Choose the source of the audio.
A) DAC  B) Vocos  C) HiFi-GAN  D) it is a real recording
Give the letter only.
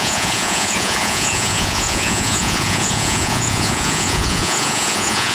B